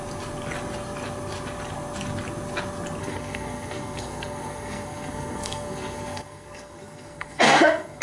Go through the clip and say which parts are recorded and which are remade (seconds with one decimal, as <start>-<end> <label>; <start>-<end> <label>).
0.0-3.0 recorded; 3.0-8.0 remade